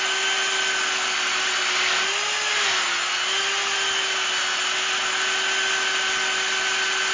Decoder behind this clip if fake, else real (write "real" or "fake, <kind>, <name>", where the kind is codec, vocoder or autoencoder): real